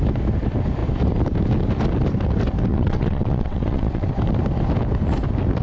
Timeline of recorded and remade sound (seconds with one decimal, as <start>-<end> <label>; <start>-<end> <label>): 0.0-2.7 recorded; 2.7-4.1 remade; 4.1-5.6 recorded